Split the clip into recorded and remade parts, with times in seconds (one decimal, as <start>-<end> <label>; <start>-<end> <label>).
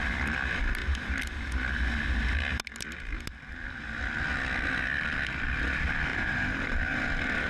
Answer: 0.0-6.1 recorded; 6.1-7.5 remade